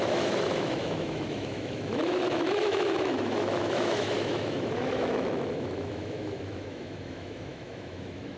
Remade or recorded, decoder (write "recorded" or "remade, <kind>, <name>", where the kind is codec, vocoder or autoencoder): remade, autoencoder, DAC-VAE